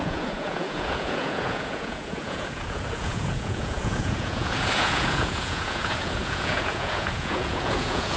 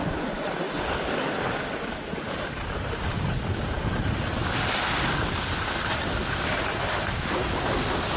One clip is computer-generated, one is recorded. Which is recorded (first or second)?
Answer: second